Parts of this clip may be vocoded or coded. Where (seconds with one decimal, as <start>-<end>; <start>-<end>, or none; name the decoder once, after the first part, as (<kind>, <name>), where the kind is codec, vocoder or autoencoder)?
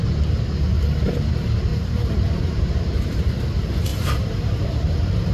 1.7-3.3 (vocoder, BigVGAN v2); 3.9-5.3